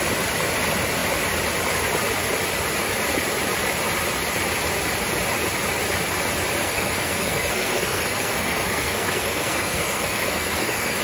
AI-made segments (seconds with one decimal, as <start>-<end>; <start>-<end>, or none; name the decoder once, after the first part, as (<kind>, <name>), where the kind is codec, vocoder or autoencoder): 6.6-11.0 (codec, SNAC)